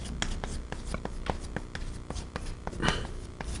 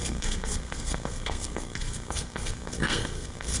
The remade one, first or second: second